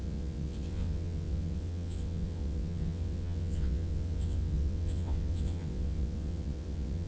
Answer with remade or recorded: remade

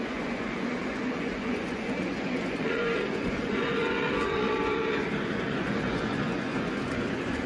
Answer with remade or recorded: remade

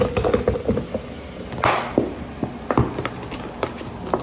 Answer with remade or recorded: recorded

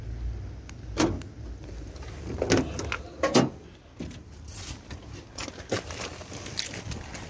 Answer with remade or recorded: recorded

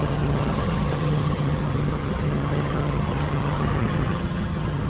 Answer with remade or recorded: remade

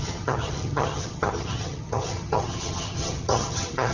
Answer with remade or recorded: remade